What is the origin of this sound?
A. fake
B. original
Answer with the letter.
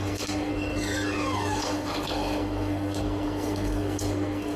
A